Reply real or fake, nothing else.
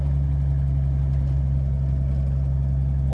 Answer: real